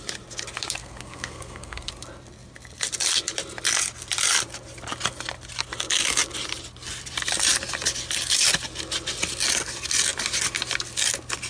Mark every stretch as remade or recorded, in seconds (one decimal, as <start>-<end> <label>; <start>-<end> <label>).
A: 0.0-0.8 recorded; 0.8-1.9 remade; 1.9-11.5 recorded